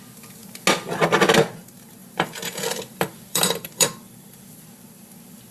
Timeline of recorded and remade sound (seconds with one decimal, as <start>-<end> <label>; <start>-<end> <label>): 0.0-2.0 recorded; 2.0-5.5 remade